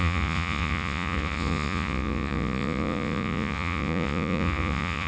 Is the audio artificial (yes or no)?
yes